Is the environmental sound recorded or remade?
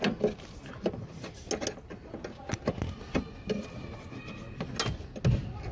recorded